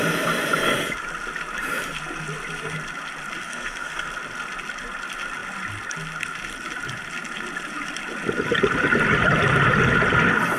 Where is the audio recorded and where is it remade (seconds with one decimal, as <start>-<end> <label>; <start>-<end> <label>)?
0.0-3.4 recorded; 3.4-4.1 remade; 4.1-10.6 recorded